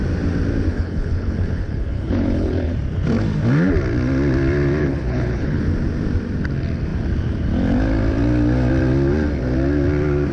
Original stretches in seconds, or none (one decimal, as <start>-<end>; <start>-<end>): 0.0-0.7; 2.7-4.8; 5.6-10.3